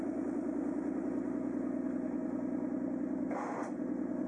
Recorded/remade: recorded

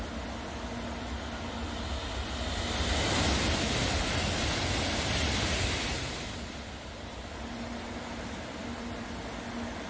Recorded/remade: recorded